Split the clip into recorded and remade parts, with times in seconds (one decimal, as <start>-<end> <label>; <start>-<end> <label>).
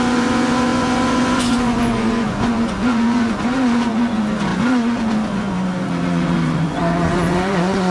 0.0-7.9 remade